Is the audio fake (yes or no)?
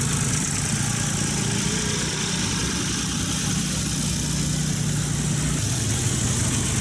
no